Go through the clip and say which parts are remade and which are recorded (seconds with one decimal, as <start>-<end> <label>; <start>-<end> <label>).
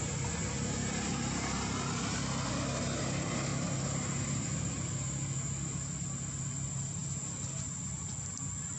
0.0-8.8 recorded